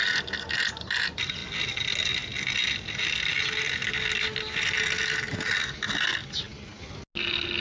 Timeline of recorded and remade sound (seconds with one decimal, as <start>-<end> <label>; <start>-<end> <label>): 0.0-7.6 recorded